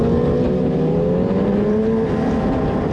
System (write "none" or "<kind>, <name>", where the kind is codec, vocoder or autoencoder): none